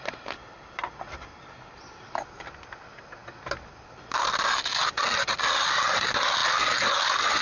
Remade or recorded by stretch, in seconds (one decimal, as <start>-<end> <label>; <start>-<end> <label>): 0.0-7.4 recorded